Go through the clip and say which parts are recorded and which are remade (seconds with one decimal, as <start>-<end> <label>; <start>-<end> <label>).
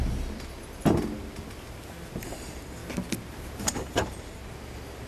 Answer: 0.0-2.2 recorded; 2.2-2.8 remade; 2.8-3.6 recorded; 3.6-4.4 remade; 4.4-5.1 recorded